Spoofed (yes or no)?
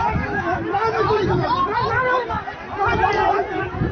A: no